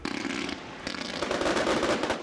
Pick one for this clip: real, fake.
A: real